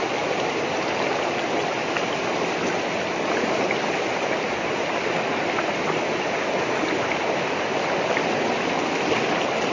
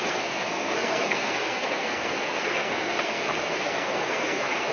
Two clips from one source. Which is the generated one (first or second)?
second